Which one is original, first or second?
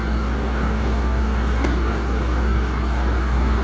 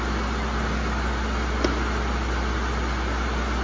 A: second